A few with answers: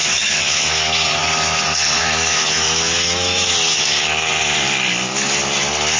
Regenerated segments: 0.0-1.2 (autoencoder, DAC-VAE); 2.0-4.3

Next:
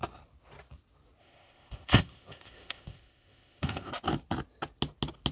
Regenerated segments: 1.2-3.9 (codec, ZipCodec)

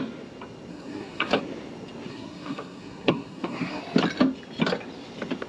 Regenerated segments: 0.7-1.4 (codec, SNAC); 2.1-3.8

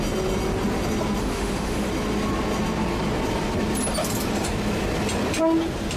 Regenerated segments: 1.2-1.9 (autoencoder, DAC-VAE)

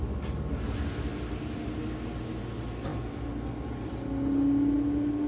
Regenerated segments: none

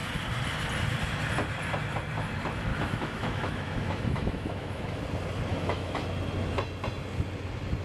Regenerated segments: 2.7-5.0 (autoencoder, DAC-VAE); 5.5-6.0

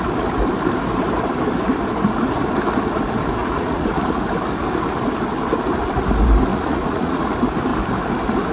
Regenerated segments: 3.4-4.2 (vocoder, Vocos); 6.5-7.2

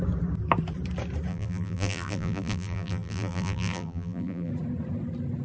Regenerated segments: 1.3-4.5 (vocoder, BigVGAN v2)